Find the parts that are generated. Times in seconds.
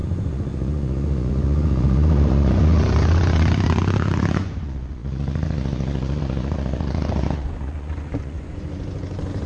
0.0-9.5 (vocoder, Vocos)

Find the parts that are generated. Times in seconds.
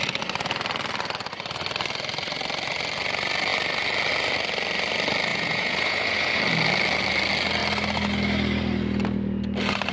5.3-6.4 (vocoder, Vocos)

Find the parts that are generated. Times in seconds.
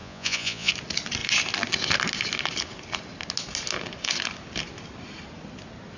0.0-0.7 (vocoder, Vocos)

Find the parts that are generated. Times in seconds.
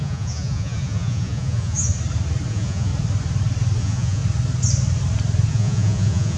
0.0-1.9 (vocoder, Vocos); 2.5-2.9; 3.8-4.2; 5.5-6.4